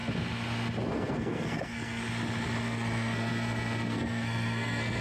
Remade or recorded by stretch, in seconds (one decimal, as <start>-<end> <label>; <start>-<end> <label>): 0.0-0.9 recorded; 0.9-2.0 remade; 2.0-2.6 recorded; 2.6-5.0 remade